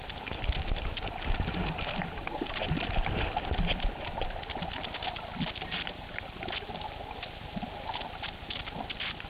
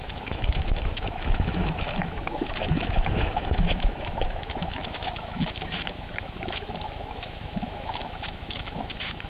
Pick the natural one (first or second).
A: first